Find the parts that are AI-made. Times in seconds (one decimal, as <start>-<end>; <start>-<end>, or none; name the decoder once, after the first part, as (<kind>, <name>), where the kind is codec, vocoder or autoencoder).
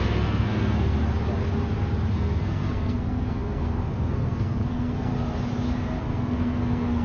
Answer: 0.0-1.0 (codec, SNAC); 2.1-5.1; 6.0-7.0